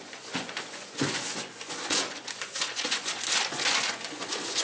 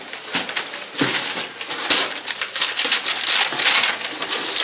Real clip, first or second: second